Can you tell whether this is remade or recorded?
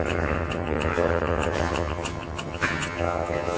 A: remade